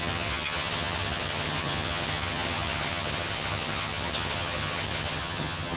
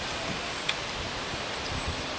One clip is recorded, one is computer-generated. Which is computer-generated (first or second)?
first